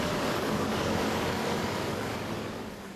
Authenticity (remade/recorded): remade